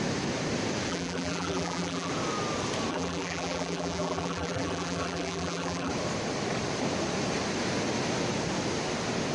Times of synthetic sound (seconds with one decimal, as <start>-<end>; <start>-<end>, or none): 0.9-2.1; 2.9-5.9